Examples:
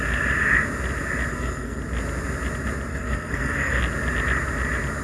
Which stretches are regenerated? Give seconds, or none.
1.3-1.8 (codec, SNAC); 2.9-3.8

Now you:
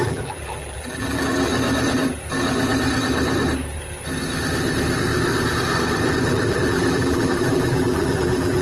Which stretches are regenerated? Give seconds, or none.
0.0-1.5 (vocoder, BigVGAN v2); 6.3-8.6